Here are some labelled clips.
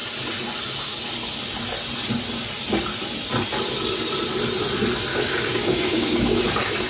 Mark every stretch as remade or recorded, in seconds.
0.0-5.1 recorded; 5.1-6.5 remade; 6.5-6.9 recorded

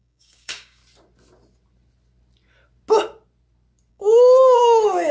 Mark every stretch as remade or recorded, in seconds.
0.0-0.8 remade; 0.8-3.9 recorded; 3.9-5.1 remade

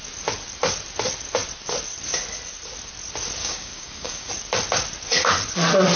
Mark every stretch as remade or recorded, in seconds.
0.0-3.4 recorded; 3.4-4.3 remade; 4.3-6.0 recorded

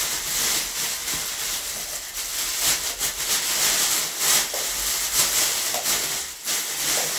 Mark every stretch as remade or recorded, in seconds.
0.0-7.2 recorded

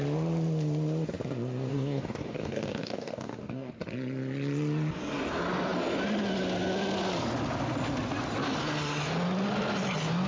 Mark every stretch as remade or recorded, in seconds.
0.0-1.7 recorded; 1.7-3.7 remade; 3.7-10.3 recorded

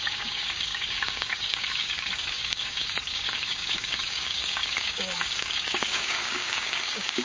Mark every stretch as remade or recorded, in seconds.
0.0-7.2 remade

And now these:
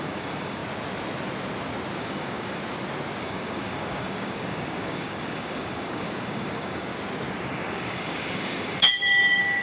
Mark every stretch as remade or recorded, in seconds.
0.0-0.6 remade; 0.6-2.0 recorded; 2.0-2.6 remade; 2.6-3.2 recorded; 3.2-6.9 remade; 6.9-7.5 recorded; 7.5-9.6 remade